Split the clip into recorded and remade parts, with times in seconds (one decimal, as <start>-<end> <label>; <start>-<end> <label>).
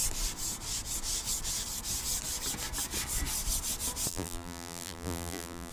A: 0.0-4.1 recorded; 4.1-5.7 remade